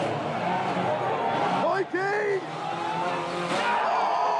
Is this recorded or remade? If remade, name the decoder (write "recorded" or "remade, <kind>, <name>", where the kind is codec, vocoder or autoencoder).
recorded